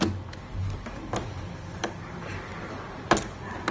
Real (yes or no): yes